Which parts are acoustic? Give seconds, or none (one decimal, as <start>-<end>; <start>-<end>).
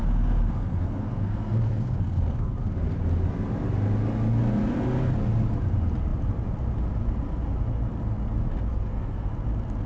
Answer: 2.5-8.7; 9.3-9.9